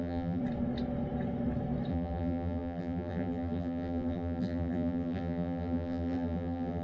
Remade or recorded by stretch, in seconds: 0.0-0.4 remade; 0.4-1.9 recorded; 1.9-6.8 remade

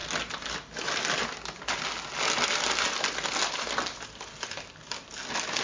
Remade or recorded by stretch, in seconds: 0.0-5.6 recorded

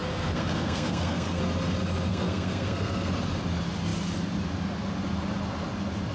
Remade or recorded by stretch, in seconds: 0.0-1.4 remade; 1.4-2.1 recorded; 2.1-3.1 remade; 3.1-6.1 recorded

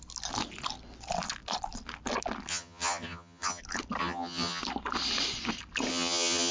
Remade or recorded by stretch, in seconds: 0.0-2.5 recorded; 2.5-3.6 remade; 3.6-4.0 recorded; 4.0-4.6 remade; 4.6-5.9 recorded; 5.9-6.5 remade

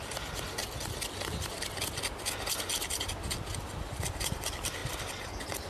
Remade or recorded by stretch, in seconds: 0.0-5.7 recorded

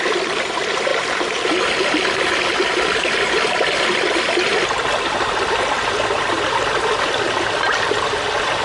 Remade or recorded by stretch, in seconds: 0.0-8.6 remade